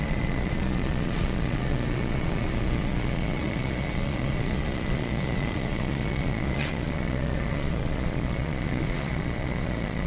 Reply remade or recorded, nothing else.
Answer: remade